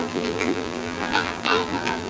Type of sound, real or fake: fake